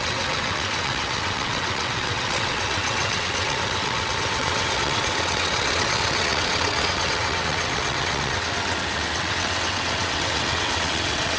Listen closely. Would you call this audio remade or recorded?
remade